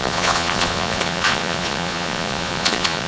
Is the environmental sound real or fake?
fake